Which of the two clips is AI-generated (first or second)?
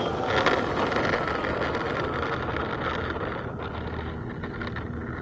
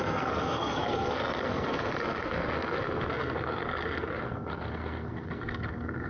second